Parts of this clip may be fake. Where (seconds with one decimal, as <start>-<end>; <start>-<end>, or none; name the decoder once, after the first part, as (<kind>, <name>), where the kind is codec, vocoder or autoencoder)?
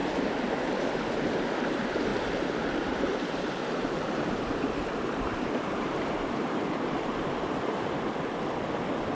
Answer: 2.1-7.4 (vocoder, BigVGAN v2)